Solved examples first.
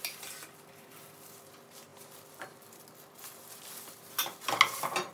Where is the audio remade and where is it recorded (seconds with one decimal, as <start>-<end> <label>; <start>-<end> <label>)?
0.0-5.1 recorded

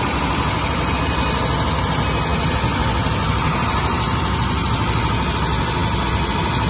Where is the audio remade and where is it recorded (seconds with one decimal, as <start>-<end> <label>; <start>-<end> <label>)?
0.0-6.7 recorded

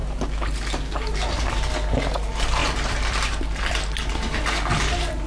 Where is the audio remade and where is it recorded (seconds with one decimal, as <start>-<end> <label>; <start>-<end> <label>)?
0.0-2.6 recorded; 2.6-3.8 remade; 3.8-5.3 recorded

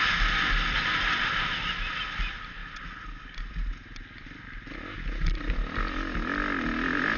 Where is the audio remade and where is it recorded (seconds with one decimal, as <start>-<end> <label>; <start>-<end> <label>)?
0.0-7.2 recorded

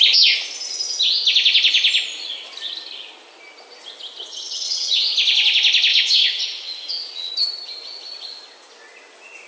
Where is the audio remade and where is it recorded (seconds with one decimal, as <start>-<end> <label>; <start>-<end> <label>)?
0.0-4.3 recorded; 4.3-5.0 remade; 5.0-5.9 recorded; 5.9-7.3 remade; 7.3-9.5 recorded